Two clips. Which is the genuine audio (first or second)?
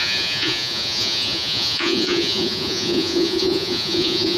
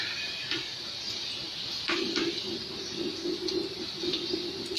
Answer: second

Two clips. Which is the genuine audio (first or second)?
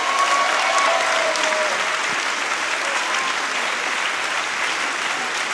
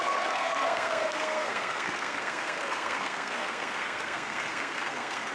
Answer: first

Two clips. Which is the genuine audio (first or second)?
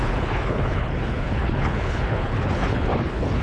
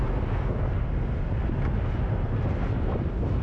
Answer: second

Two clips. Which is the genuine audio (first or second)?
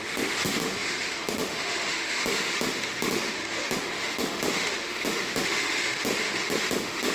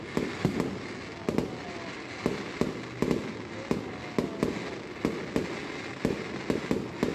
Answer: second